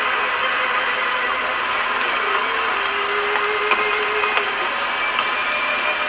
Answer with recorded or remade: recorded